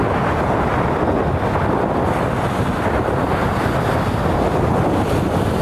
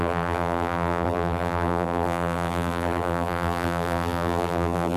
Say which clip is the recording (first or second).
first